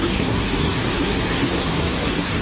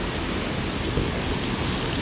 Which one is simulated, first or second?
first